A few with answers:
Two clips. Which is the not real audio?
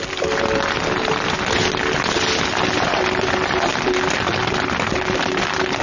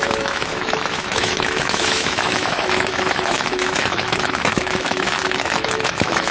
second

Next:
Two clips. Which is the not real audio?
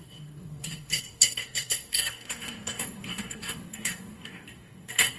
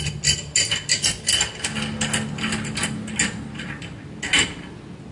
first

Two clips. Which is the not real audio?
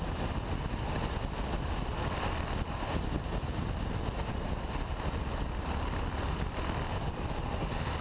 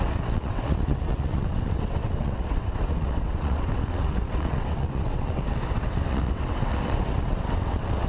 second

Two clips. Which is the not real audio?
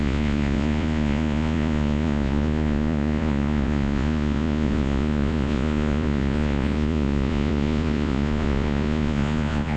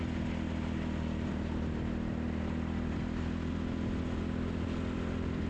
first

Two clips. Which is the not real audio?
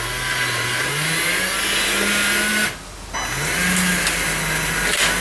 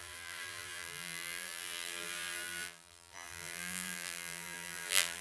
second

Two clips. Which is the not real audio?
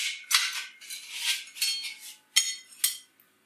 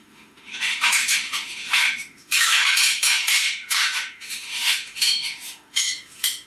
second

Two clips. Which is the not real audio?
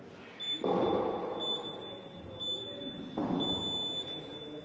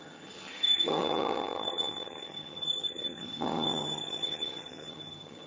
second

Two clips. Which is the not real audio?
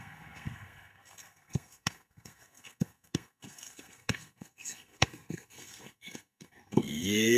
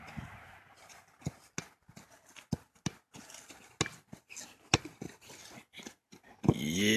first